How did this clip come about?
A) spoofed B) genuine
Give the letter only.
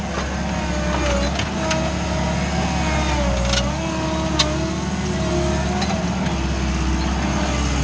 B